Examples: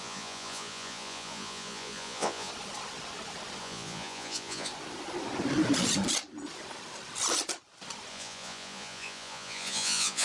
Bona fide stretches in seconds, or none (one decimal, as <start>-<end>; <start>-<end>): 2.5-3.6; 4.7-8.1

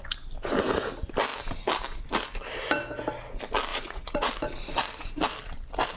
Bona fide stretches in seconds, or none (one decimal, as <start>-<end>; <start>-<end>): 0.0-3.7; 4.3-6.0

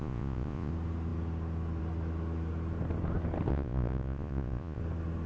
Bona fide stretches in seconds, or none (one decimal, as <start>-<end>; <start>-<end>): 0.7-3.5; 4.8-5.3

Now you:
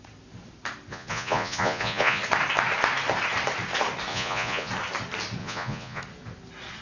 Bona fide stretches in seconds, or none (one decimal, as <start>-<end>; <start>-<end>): 0.0-0.9; 2.2-4.1; 4.7-5.4; 6.0-6.8